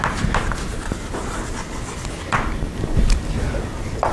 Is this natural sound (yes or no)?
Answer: yes